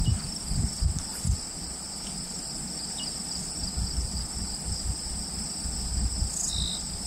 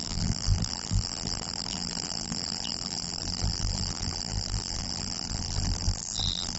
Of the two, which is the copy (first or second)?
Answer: second